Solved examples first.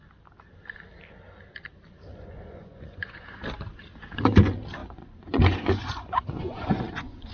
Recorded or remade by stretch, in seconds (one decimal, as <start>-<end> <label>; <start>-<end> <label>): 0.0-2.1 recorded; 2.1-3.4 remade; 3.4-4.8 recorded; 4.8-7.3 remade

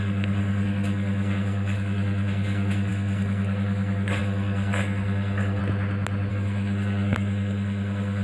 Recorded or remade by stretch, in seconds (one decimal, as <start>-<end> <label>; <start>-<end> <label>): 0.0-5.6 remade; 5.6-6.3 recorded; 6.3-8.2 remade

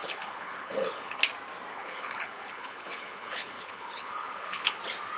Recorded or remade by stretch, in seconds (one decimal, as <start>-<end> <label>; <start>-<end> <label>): 0.0-1.2 remade; 1.2-1.7 recorded; 1.7-4.8 remade; 4.8-5.2 recorded

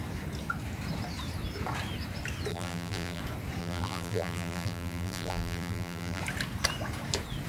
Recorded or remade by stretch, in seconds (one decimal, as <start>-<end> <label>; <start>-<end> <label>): 0.0-2.5 recorded; 2.5-3.2 remade; 3.2-3.6 recorded; 3.6-6.2 remade; 6.2-7.5 recorded

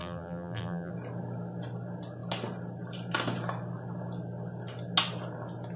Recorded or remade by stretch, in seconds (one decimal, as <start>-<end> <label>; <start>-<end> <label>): 0.0-0.9 remade; 0.9-5.8 recorded